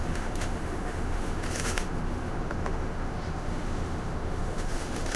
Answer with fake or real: fake